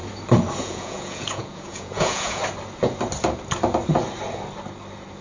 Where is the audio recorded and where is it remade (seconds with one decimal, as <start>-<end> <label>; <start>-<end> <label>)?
0.0-0.6 recorded; 0.6-2.4 remade; 2.4-5.2 recorded